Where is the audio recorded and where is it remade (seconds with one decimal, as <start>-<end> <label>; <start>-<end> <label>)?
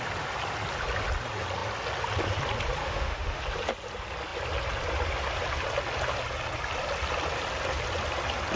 0.0-2.8 recorded; 2.8-3.4 remade; 3.4-8.6 recorded